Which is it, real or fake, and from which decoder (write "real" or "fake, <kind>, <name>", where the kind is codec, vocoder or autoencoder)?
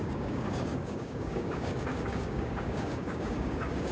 fake, codec, DAC